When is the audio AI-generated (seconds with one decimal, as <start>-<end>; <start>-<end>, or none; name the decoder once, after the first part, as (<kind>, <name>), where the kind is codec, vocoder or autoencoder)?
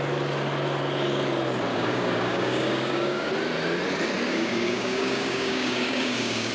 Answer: 1.7-3.3 (codec, DAC); 4.3-6.5